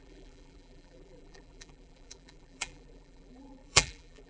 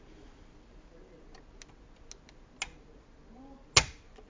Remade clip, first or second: first